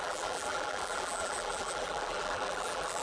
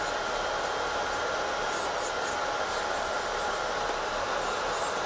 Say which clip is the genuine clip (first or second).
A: second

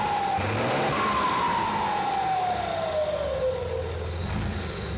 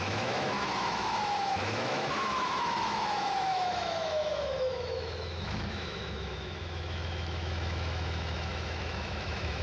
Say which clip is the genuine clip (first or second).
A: first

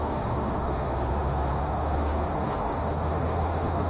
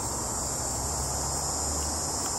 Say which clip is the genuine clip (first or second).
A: second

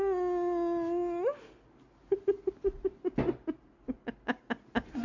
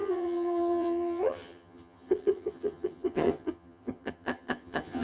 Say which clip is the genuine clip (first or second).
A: first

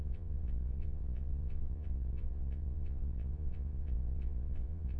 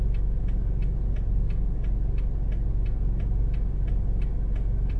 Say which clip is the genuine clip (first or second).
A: second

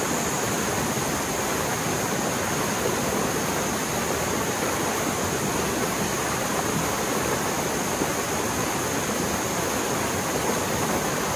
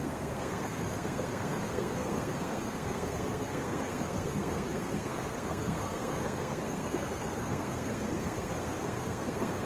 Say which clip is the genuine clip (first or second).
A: first